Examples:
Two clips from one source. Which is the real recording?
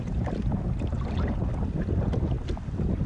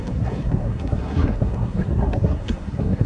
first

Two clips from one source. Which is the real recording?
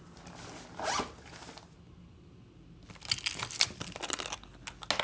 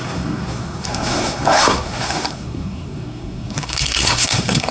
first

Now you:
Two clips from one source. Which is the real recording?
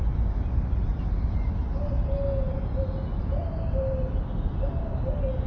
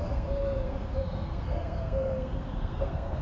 first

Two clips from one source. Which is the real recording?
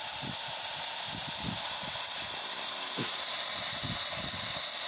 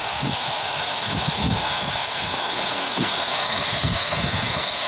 first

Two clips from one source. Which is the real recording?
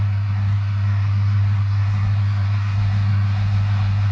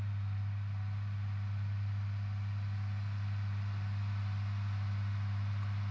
second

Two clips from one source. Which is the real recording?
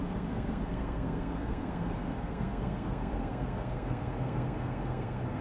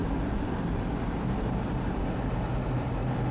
second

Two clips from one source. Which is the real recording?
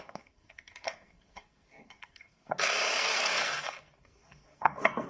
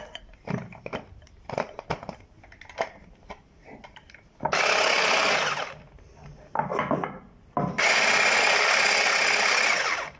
second